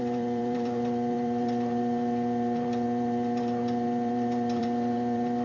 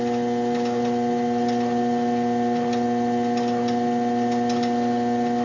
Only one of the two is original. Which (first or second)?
second